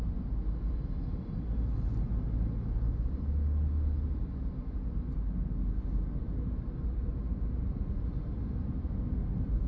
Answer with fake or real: real